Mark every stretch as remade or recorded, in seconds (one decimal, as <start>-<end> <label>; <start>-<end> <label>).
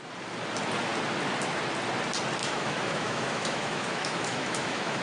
0.0-2.4 recorded; 2.4-5.0 remade